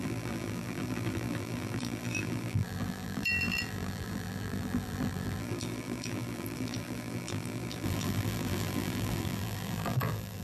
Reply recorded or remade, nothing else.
remade